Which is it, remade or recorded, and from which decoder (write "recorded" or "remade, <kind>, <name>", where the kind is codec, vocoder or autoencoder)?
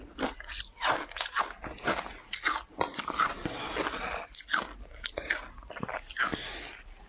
recorded